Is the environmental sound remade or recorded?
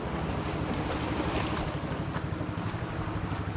recorded